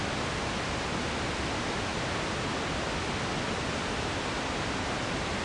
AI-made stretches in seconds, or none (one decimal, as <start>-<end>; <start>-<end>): none